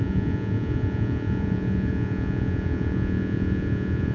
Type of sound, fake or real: fake